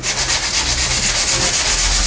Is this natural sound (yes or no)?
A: yes